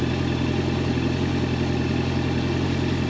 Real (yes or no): yes